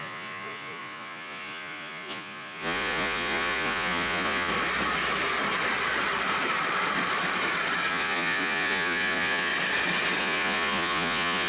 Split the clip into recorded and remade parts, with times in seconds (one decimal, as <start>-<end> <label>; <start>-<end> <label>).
0.0-4.5 remade; 4.5-7.9 recorded; 7.9-9.5 remade; 9.5-10.2 recorded; 10.2-11.5 remade